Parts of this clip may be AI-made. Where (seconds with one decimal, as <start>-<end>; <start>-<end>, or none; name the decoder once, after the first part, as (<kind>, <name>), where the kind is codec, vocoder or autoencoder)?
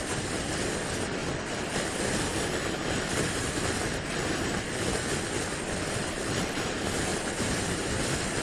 0.0-1.2 (vocoder, BigVGAN v2); 6.1-8.4